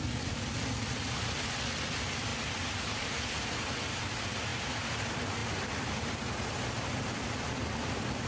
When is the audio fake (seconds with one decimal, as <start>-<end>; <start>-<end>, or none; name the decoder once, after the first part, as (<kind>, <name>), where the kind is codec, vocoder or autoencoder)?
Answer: 0.0-2.3 (vocoder, BigVGAN v2); 2.9-5.4; 6.9-8.3

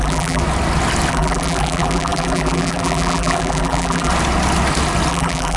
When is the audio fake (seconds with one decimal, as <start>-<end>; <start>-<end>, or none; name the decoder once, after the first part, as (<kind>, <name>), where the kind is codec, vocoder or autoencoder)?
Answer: 0.0-0.4 (vocoder, BigVGAN v2); 1.1-4.1; 5.1-5.6

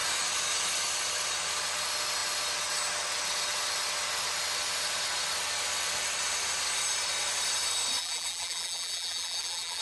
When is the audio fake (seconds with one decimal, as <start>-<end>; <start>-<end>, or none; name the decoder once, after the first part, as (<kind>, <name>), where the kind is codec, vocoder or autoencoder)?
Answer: 8.0-9.8 (vocoder, BigVGAN v2)

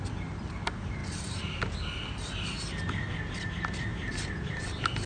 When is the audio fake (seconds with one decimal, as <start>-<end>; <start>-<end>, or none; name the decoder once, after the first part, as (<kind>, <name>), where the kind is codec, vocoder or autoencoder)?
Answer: 1.0-1.5 (vocoder, BigVGAN v2); 3.9-5.1

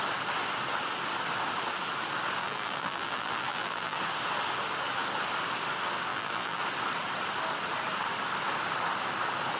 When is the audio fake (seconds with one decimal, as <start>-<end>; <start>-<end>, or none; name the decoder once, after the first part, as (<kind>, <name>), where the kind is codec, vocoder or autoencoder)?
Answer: 2.4-4.0 (vocoder, BigVGAN v2); 6.1-6.6